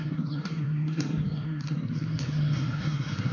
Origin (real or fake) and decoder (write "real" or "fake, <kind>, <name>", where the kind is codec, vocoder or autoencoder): fake, codec, SNAC